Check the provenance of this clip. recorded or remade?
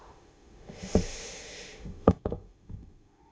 remade